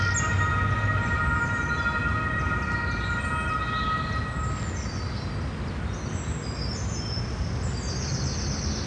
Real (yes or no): yes